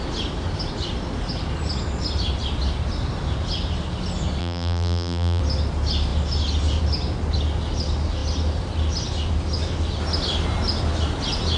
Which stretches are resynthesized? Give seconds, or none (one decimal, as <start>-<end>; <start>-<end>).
4.4-5.4